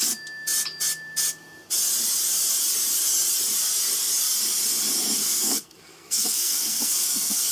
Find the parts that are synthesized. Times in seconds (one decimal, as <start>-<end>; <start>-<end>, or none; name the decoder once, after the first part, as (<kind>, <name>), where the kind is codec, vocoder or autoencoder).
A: 5.2-7.5 (codec, SNAC)